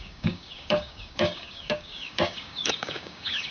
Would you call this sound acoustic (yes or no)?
no